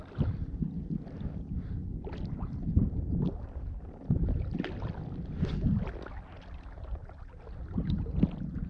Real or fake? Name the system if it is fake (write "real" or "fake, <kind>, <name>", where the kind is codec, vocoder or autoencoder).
real